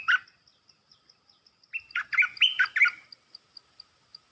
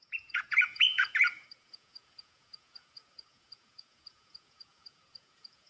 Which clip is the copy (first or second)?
second